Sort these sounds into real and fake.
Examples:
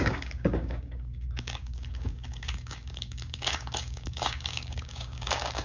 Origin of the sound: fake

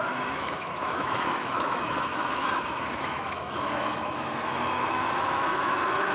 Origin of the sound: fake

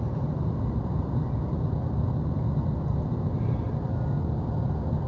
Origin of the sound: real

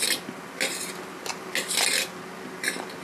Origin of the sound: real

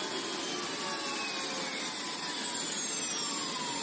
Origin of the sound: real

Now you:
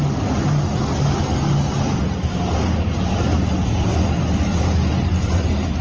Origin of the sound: real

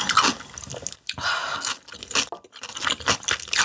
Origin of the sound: real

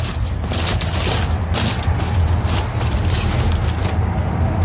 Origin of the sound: real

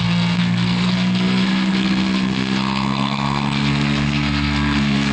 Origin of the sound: fake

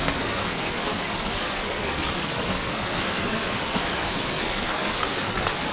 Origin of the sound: fake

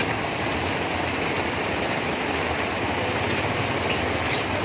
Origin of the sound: real